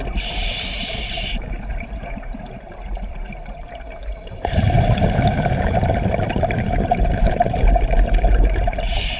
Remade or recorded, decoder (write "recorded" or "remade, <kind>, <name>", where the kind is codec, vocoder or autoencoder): remade, vocoder, BigVGAN v2